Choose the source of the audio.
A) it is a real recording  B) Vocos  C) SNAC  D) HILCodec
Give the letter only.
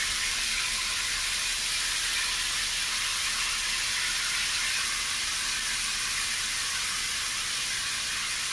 A